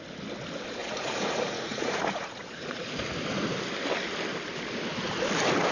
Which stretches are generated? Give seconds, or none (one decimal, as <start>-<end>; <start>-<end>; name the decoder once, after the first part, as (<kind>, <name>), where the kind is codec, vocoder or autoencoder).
0.8-2.9 (vocoder, Vocos)